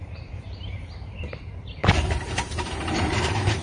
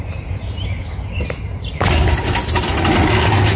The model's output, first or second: first